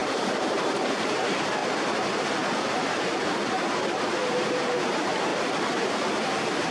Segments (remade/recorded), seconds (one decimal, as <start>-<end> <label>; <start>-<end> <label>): 0.0-1.6 remade; 1.6-4.3 recorded; 4.3-5.3 remade; 5.3-5.9 recorded; 5.9-6.7 remade